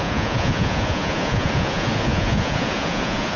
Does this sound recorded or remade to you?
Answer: remade